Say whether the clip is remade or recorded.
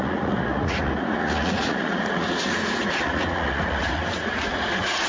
remade